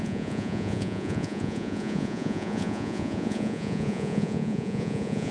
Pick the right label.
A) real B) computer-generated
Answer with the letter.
B